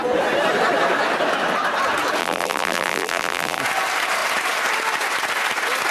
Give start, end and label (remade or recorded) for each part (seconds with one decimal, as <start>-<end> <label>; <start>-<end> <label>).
0.0-2.2 recorded; 2.2-3.6 remade; 3.6-5.9 recorded